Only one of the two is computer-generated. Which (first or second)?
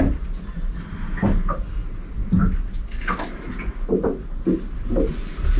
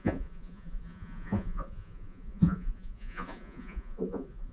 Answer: second